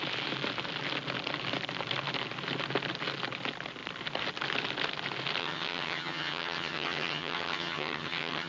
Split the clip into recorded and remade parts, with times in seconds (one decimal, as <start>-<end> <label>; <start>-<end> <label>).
0.0-5.4 recorded; 5.4-8.5 remade